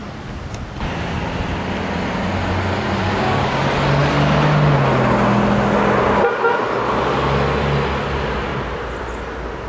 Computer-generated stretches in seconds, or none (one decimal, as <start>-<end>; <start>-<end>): 3.0-3.6